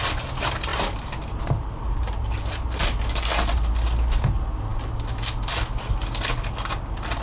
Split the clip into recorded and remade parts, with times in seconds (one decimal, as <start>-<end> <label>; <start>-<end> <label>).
0.0-0.7 recorded; 0.7-3.0 remade; 3.0-7.2 recorded